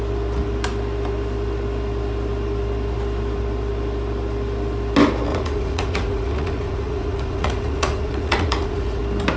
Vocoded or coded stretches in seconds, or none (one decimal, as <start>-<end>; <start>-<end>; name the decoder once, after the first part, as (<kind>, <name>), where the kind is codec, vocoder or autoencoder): 5.3-9.0 (vocoder, Vocos)